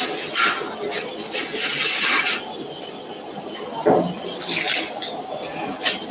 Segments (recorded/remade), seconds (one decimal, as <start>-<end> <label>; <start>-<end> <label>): 0.0-6.1 recorded